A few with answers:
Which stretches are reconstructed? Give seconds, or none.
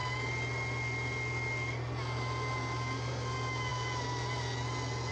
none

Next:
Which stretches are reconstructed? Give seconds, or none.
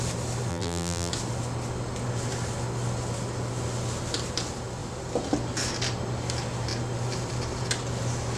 0.5-1.1 (vocoder, BigVGAN v2)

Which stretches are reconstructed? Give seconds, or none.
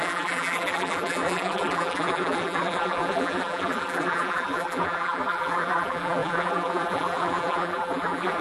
0.0-8.4 (vocoder, BigVGAN v2)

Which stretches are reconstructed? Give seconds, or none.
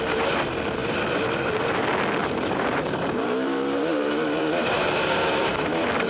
2.2-5.5 (vocoder, BigVGAN v2)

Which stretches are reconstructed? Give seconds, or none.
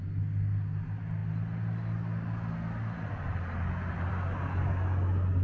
none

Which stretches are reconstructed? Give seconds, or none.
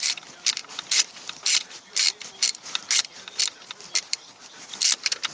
0.0-5.3 (vocoder, BigVGAN v2)